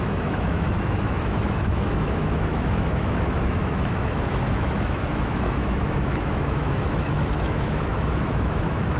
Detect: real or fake fake